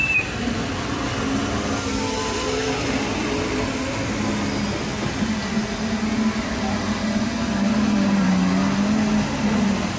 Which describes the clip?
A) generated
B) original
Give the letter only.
B